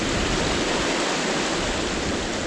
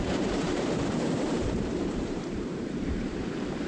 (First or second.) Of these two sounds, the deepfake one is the second